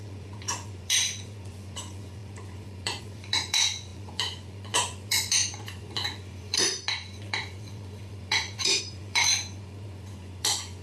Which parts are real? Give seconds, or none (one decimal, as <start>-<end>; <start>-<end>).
none